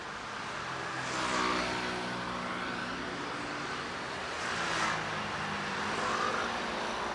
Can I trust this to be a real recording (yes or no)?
yes